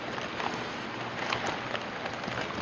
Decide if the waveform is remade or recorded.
recorded